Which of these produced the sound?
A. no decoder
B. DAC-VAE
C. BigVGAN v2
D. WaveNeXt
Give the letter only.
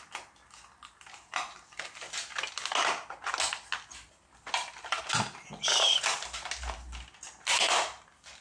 A